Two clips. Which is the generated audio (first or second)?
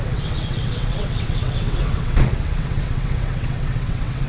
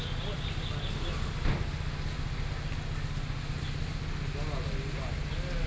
first